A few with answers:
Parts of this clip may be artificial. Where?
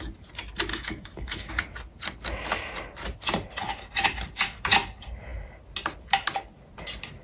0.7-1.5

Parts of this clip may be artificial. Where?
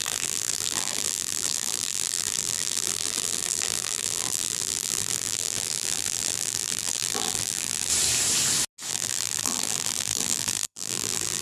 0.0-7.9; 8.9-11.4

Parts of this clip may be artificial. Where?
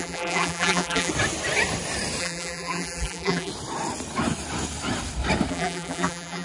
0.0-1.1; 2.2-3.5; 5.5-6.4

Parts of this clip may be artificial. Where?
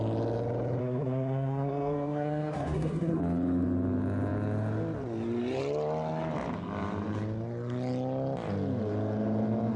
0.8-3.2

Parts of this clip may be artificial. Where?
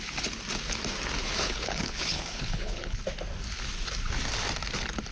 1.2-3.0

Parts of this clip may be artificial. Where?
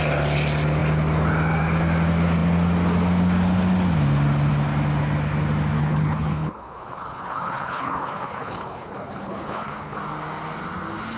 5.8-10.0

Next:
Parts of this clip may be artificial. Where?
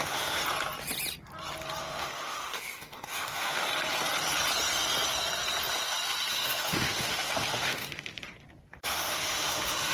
0.0-0.4; 1.8-3.7; 6.3-8.1; 8.8-9.9